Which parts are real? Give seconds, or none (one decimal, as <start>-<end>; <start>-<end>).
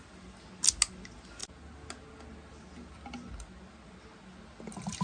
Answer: 0.0-5.0